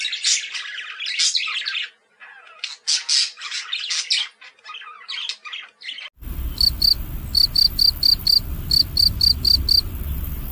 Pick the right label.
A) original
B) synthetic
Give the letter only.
A